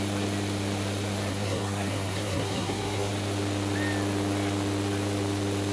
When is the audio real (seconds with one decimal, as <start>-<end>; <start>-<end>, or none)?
0.0-1.3; 3.1-5.7